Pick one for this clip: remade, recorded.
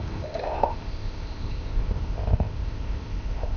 remade